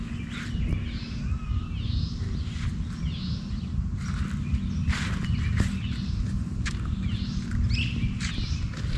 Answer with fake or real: real